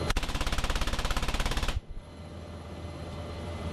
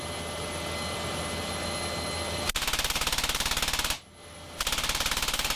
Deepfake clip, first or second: first